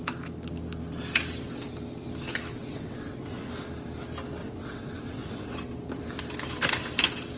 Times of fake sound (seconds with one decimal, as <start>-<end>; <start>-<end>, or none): 2.5-3.5; 4.4-5.5